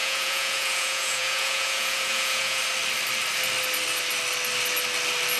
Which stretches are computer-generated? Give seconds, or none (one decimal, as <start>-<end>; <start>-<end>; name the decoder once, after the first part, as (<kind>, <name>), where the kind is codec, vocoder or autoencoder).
0.0-2.6 (vocoder, Vocos)